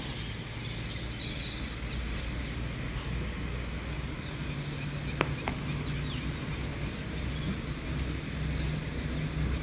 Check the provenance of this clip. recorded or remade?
recorded